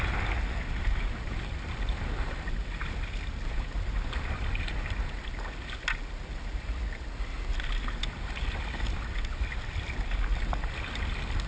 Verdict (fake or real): real